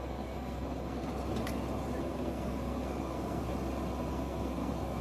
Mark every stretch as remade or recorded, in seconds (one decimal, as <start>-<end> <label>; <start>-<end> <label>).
0.0-1.1 remade; 1.1-2.0 recorded; 2.0-3.5 remade; 3.5-4.1 recorded; 4.1-5.0 remade